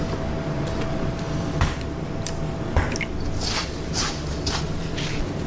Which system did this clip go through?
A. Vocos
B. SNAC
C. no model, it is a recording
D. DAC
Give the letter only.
C